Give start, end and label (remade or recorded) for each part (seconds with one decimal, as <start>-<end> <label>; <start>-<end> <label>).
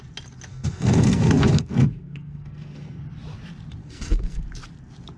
0.0-0.5 recorded; 0.5-3.0 remade; 3.0-3.8 recorded; 3.8-4.4 remade; 4.4-5.2 recorded